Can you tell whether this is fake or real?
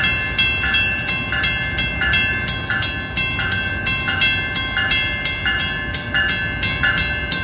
real